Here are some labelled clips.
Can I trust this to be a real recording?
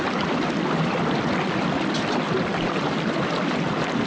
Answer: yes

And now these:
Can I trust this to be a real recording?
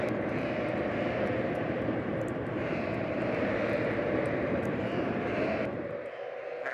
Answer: no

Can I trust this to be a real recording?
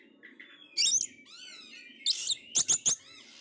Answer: yes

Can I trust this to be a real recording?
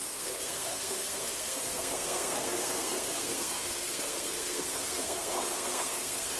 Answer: no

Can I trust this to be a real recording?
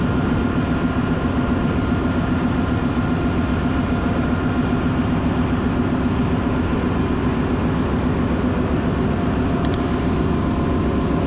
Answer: yes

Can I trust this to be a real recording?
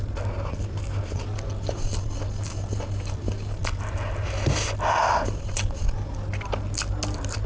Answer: yes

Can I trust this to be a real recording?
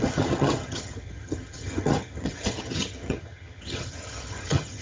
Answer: no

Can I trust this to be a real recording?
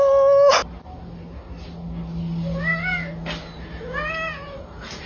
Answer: yes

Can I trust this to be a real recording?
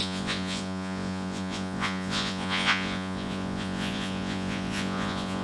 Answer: no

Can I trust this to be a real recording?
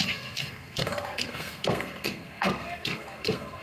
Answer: no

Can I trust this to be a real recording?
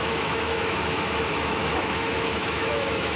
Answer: no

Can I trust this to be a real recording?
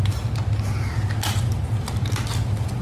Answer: yes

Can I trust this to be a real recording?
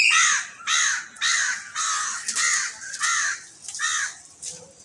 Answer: yes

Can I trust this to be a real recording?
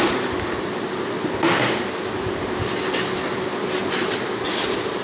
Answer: yes